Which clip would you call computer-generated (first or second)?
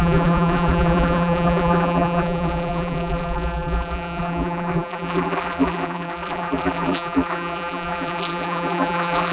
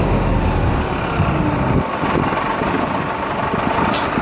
first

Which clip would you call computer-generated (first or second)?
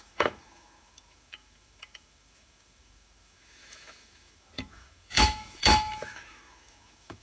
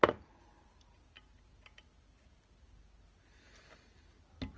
first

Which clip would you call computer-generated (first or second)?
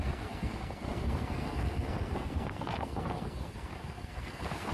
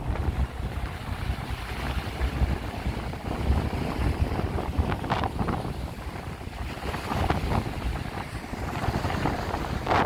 first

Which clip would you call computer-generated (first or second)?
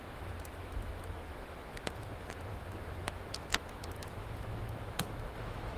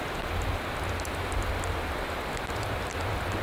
first